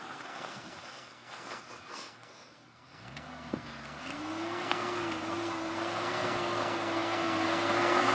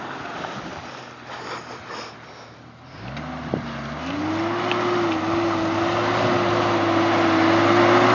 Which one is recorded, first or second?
second